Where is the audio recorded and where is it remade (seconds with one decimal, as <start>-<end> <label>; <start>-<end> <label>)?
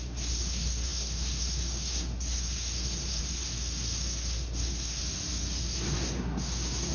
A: 0.0-5.0 remade; 5.0-5.6 recorded; 5.6-6.9 remade